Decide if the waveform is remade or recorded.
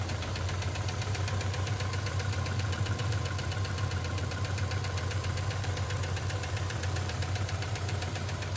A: remade